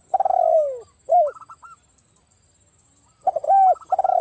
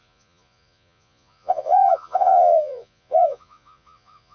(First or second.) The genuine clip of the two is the first